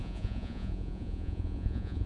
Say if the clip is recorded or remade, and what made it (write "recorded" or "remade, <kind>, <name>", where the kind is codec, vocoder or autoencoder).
remade, vocoder, Vocos